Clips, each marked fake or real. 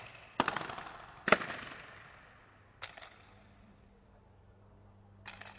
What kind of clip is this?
real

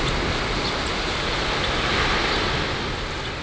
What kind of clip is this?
real